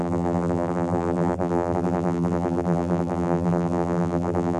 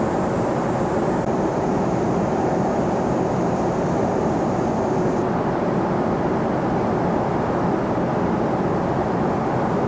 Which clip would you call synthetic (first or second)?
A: first